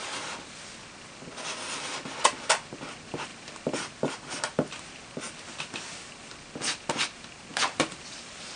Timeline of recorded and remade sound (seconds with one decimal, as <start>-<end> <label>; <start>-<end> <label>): 0.0-7.5 recorded; 7.5-8.6 remade